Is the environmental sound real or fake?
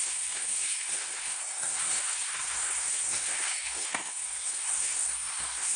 fake